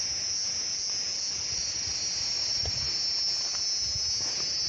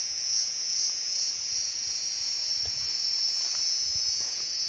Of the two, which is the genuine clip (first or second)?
first